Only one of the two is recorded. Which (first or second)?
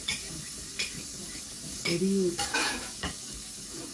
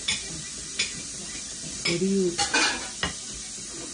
second